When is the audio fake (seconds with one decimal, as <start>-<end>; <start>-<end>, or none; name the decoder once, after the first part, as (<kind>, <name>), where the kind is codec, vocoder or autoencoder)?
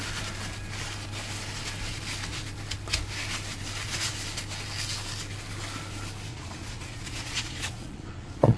6.3-8.6 (vocoder, Vocos)